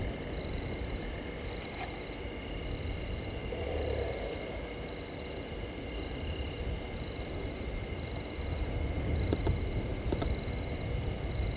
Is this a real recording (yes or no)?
yes